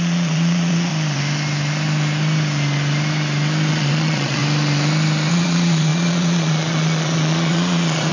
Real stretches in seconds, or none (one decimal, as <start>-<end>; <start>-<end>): 0.9-3.7; 4.4-5.3

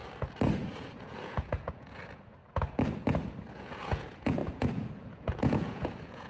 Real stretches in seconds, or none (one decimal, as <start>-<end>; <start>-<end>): 0.0-0.6; 2.4-3.5

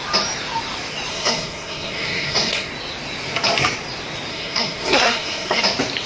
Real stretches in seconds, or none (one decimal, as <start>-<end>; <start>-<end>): 0.0-1.1; 2.7-4.3; 5.6-6.1

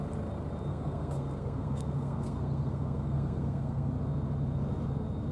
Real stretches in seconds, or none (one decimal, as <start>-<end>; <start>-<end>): 0.0-0.7; 3.9-5.3

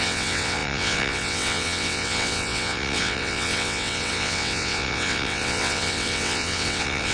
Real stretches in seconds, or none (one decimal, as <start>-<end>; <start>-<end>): none